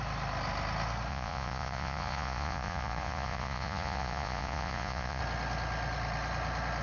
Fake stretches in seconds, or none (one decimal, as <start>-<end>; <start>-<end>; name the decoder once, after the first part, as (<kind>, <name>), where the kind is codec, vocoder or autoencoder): 1.1-5.2 (vocoder, Vocos)